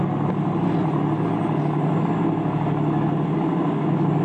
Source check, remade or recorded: recorded